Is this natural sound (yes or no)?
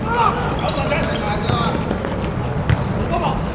yes